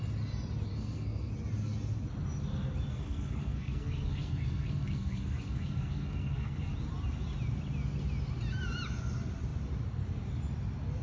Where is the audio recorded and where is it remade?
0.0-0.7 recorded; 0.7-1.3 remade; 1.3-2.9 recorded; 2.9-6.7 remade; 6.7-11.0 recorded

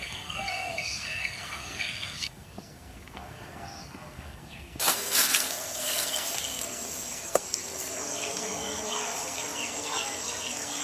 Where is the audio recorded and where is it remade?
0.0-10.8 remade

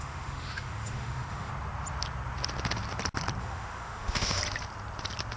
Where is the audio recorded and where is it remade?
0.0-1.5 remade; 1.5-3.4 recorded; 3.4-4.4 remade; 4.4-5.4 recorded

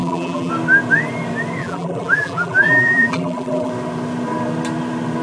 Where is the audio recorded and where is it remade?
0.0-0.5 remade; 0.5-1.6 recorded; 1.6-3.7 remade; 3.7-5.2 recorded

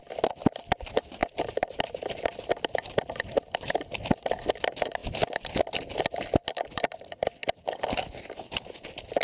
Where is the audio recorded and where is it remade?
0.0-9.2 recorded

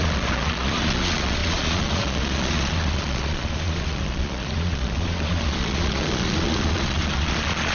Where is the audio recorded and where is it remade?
0.0-7.7 remade

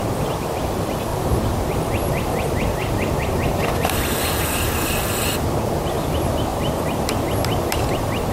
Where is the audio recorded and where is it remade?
0.0-8.3 recorded